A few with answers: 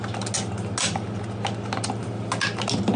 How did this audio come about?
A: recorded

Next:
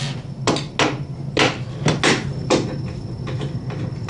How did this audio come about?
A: recorded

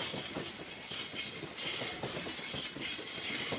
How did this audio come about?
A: recorded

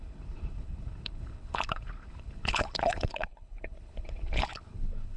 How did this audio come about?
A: remade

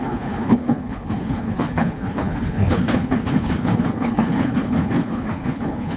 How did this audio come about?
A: remade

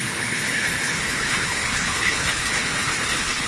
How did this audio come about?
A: remade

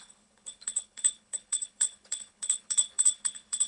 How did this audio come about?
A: remade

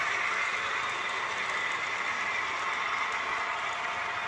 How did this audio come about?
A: recorded